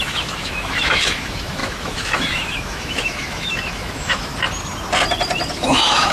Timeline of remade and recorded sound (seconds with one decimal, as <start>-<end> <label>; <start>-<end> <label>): 0.0-4.3 remade; 4.3-5.5 recorded; 5.5-6.1 remade